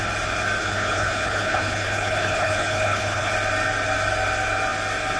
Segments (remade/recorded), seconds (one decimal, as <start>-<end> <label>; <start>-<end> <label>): 0.0-0.6 recorded; 0.6-3.3 remade; 3.3-5.2 recorded